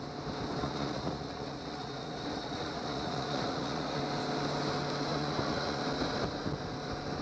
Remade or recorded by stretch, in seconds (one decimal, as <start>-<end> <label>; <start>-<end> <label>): 0.0-0.6 recorded; 0.6-4.0 remade; 4.0-5.1 recorded; 5.1-5.8 remade; 5.8-7.2 recorded